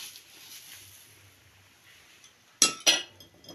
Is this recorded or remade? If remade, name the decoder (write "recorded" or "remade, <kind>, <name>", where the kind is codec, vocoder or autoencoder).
recorded